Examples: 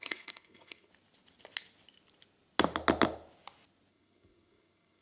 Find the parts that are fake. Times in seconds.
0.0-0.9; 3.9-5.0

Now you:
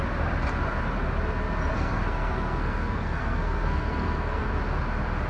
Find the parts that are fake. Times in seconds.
1.7-4.5

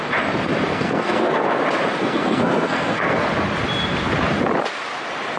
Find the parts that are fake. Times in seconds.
0.7-1.6; 2.0-3.2

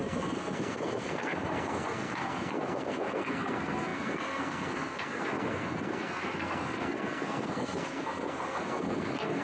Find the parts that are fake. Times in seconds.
0.0-9.4

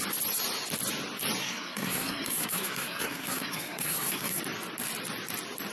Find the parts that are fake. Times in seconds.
1.4-4.4

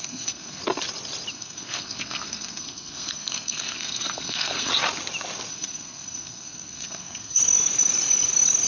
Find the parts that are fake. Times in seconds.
0.0-0.6; 1.3-4.7; 5.5-7.4

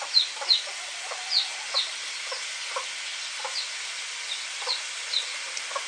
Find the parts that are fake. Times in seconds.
none

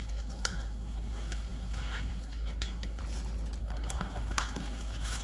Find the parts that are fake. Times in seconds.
0.0-3.0; 3.6-5.2